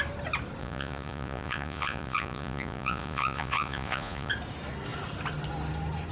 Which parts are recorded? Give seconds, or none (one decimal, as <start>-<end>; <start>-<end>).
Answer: 0.0-0.6; 4.3-6.1